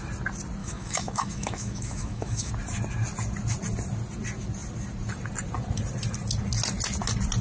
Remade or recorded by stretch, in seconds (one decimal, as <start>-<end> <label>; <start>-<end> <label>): 0.0-0.6 recorded; 0.6-2.5 remade; 2.5-7.4 recorded